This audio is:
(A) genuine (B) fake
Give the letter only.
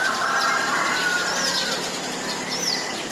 A